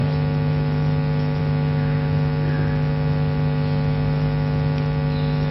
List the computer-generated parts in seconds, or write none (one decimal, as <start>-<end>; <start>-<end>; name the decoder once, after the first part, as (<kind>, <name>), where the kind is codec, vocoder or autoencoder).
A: none

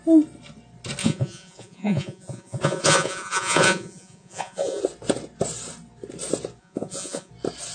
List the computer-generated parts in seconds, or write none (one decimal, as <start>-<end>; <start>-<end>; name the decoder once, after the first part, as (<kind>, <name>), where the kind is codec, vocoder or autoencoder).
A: 1.0-4.8 (vocoder, Vocos); 6.6-7.3

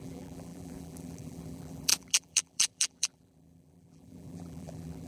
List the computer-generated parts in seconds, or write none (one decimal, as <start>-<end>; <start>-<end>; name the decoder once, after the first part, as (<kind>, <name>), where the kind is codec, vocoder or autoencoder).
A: 0.0-5.1 (vocoder, BigVGAN v2)

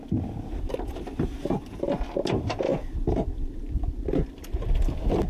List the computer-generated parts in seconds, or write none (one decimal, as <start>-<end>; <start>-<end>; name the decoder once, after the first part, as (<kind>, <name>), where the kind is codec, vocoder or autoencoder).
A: none